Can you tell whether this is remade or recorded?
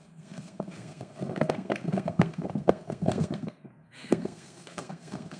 remade